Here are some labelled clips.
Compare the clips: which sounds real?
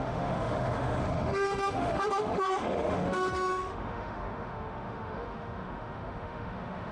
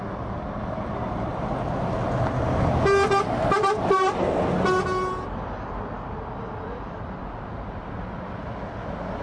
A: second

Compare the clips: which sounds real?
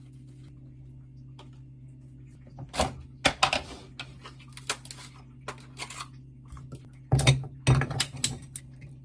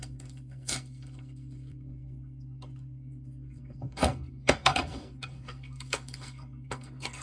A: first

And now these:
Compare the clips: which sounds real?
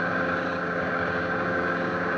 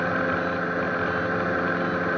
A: second